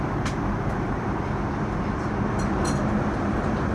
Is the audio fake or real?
real